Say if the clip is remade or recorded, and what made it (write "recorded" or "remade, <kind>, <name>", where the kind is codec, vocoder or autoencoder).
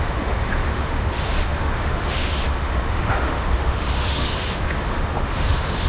remade, autoencoder, DAC-VAE